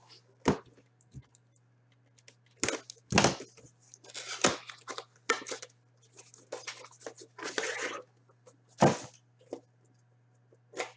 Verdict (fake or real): real